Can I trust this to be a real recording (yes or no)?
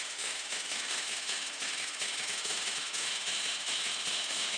no